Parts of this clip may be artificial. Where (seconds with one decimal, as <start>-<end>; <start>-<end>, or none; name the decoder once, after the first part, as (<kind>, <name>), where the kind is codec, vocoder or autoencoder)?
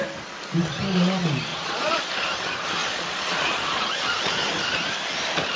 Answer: 1.5-2.0 (vocoder, Vocos); 2.8-4.3